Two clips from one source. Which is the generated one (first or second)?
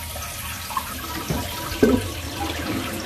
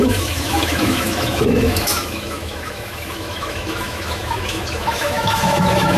second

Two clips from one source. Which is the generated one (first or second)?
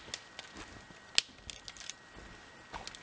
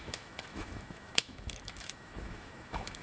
second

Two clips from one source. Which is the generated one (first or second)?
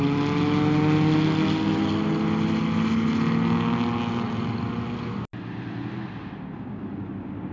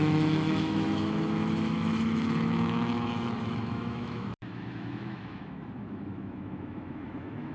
second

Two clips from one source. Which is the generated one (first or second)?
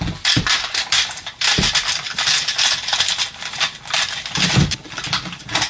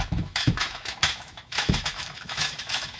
second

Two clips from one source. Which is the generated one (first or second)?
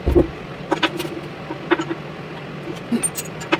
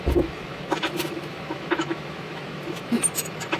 second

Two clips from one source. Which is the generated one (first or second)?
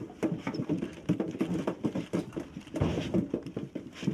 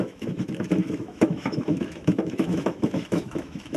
second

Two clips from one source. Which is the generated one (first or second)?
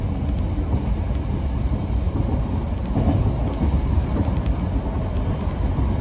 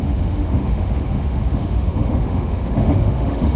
second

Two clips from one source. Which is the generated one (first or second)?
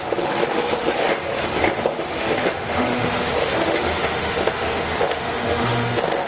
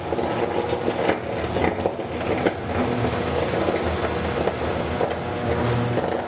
first